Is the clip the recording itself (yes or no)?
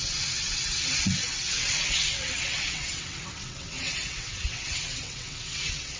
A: no